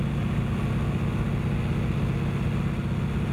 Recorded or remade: recorded